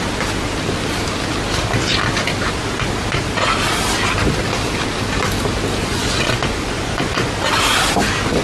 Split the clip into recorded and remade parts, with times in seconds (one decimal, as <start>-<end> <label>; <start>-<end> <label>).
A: 0.0-5.8 recorded; 5.8-7.3 remade; 7.3-8.4 recorded

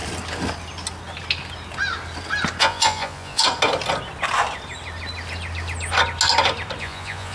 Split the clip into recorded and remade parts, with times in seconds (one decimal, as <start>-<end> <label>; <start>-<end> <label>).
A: 0.0-2.6 recorded; 2.6-3.4 remade; 3.4-6.8 recorded; 6.8-7.3 remade

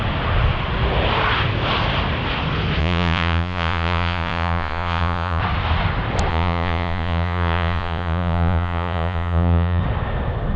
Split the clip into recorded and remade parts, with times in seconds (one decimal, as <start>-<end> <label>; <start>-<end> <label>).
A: 0.0-2.8 recorded; 2.8-5.4 remade; 5.4-6.3 recorded; 6.3-9.8 remade; 9.8-10.6 recorded

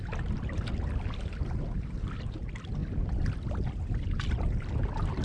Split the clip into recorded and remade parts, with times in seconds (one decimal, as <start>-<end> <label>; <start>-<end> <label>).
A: 0.0-5.2 recorded